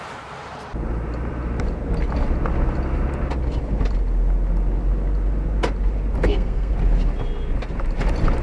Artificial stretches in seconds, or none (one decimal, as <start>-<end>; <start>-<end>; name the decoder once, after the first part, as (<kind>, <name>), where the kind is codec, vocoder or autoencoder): 6.2-6.7 (codec, SNAC)